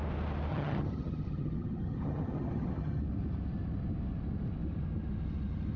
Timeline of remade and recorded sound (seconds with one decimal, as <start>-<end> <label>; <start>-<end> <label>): 0.0-0.5 recorded; 0.5-3.0 remade; 3.0-5.8 recorded